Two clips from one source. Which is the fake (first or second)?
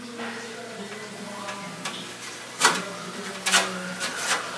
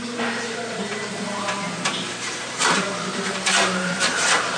second